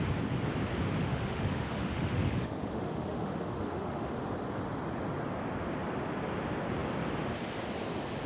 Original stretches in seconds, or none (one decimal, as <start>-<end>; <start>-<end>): 0.0-1.0; 4.2-8.3